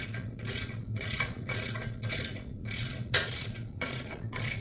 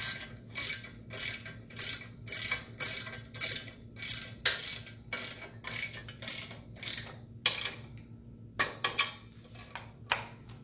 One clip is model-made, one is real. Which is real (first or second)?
second